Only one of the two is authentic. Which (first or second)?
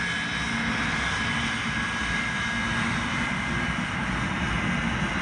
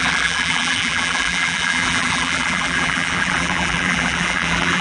first